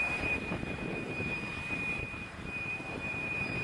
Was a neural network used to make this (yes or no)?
yes